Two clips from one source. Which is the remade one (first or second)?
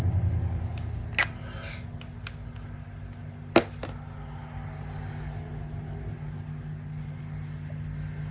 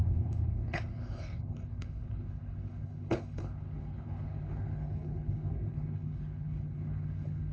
second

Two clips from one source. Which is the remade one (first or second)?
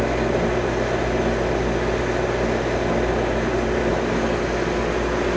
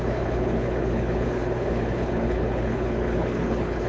second